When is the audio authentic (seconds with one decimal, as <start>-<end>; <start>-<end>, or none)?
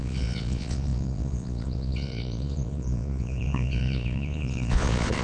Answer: none